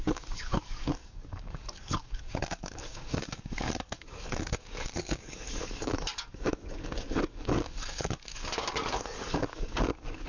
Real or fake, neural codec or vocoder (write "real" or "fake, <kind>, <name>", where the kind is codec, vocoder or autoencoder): fake, codec, DAC